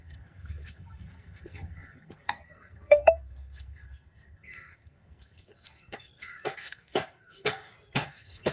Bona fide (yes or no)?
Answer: no